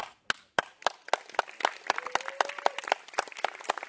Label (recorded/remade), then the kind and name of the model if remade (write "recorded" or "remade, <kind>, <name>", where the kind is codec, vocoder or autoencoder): recorded